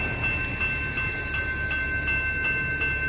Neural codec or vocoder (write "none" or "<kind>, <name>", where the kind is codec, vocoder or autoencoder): none